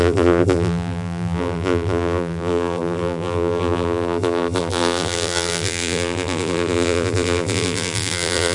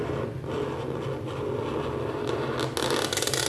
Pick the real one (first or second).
second